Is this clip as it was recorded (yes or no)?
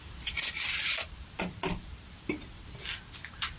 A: yes